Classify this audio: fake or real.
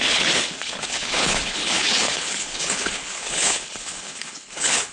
fake